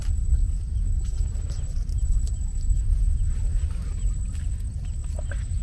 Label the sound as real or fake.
real